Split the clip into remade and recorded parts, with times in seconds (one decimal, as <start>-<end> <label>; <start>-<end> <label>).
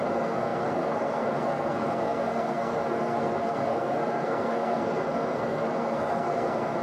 0.0-6.8 remade